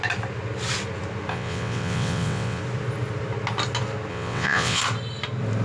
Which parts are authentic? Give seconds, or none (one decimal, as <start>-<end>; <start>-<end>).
0.0-1.3; 2.6-4.1; 4.8-5.6